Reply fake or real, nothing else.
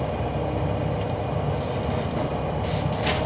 real